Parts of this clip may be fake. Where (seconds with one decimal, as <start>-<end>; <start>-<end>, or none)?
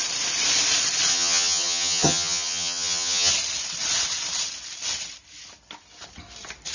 1.1-3.3